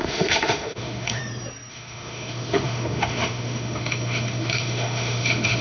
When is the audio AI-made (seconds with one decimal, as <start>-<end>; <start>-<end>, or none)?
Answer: 0.0-1.2; 1.7-5.6